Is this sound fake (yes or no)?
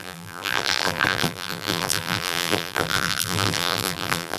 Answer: yes